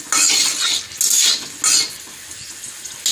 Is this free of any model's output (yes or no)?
yes